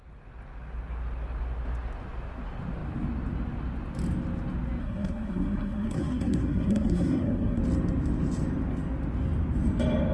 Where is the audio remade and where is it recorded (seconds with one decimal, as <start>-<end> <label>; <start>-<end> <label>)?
0.0-4.8 recorded; 4.8-7.6 remade; 7.6-10.1 recorded